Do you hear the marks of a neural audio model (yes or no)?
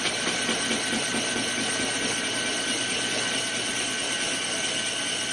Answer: no